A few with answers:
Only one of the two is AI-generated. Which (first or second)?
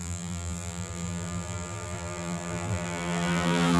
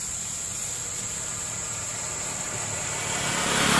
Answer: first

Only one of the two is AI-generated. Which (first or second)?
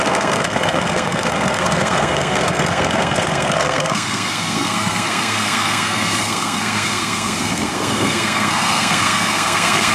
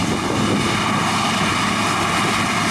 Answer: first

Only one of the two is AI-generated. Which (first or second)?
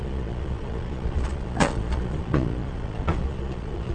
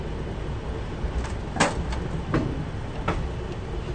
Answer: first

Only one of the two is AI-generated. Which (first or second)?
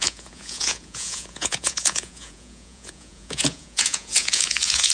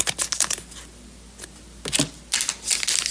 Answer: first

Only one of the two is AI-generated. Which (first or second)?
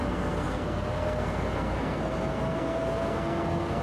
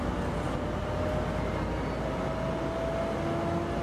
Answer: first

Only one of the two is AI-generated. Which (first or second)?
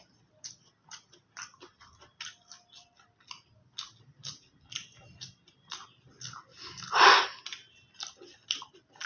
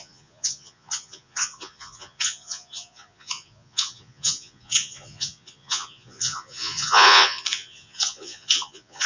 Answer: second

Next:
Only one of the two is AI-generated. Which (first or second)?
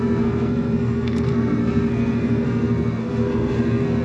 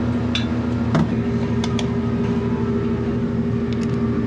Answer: first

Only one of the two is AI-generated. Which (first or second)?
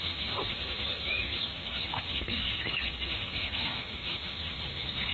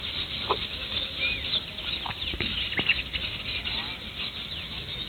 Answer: first